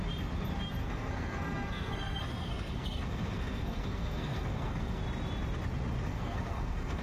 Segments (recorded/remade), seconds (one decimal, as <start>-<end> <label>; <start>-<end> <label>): 0.0-0.8 recorded; 0.8-5.0 remade; 5.0-6.1 recorded; 6.1-7.0 remade